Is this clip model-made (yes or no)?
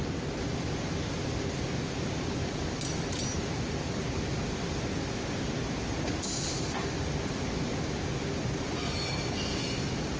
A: no